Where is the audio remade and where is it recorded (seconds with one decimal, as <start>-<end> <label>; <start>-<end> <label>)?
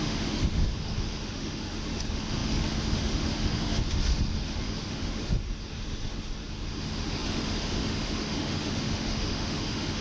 0.0-10.0 remade